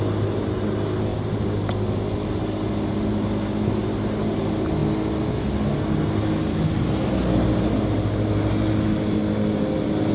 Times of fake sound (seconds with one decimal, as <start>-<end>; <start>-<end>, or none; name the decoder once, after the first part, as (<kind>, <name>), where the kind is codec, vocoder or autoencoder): none